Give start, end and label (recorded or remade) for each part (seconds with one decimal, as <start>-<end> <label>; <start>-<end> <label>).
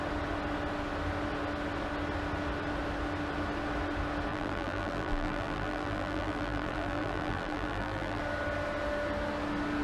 0.0-4.3 recorded; 4.3-8.2 remade; 8.2-9.8 recorded